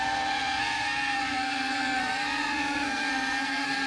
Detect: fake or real fake